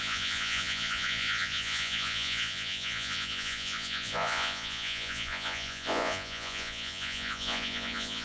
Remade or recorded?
remade